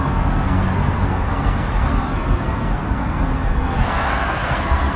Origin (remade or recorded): remade